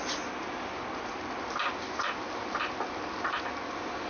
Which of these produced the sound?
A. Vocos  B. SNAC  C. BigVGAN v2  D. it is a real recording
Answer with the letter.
D